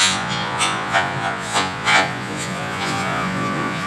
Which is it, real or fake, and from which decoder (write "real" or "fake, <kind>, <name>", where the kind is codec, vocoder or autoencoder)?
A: fake, vocoder, Vocos